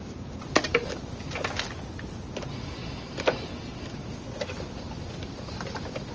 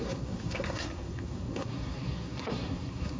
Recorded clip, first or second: first